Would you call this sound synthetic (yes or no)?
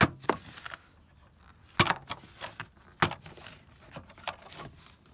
no